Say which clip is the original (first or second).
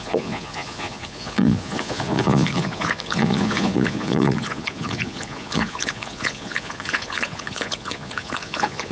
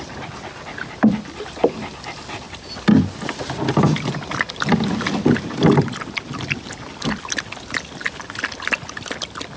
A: second